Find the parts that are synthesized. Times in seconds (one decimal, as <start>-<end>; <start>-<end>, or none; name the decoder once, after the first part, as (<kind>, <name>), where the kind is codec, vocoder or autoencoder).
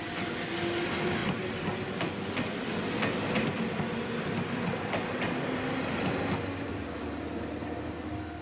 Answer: none